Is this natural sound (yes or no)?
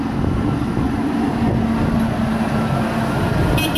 yes